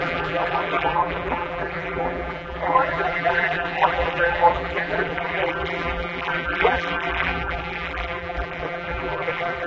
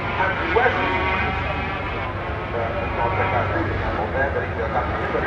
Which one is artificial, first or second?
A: first